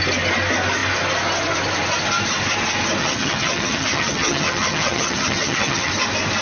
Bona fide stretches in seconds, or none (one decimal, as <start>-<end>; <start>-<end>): 0.0-3.0; 5.9-6.4